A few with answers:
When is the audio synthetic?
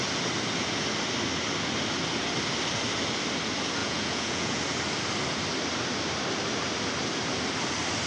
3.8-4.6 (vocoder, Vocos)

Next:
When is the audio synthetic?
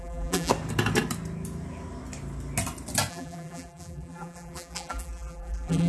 0.0-0.5 (vocoder, BigVGAN v2); 3.1-5.9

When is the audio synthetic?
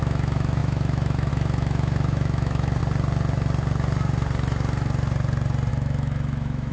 0.0-2.8 (autoencoder, DAC-VAE); 5.7-6.7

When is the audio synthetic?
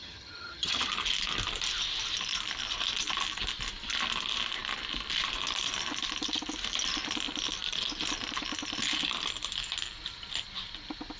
0.0-0.9 (vocoder, HiFi-GAN)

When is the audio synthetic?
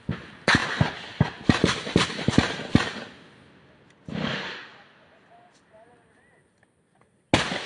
none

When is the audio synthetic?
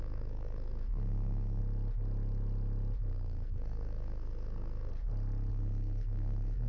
0.0-1.6 (codec, SNAC); 3.1-4.9; 5.5-6.7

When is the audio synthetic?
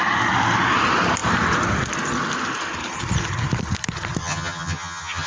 4.2-5.3 (vocoder, HiFi-GAN)